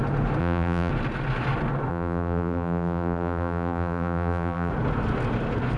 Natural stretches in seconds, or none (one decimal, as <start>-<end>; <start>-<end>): 0.0-0.4; 0.9-1.9; 4.7-5.8